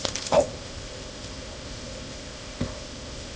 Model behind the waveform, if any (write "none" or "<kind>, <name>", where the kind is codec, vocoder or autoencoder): codec, ZipCodec